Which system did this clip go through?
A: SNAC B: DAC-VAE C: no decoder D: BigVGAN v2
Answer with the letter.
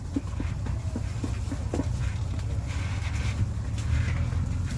C